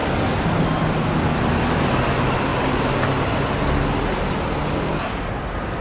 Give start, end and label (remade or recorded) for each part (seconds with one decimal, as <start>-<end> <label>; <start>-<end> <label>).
0.0-5.8 recorded